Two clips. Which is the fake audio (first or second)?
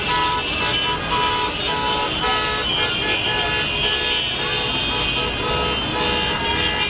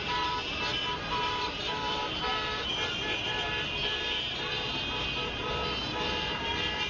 second